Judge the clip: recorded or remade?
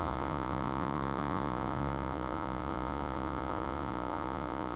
remade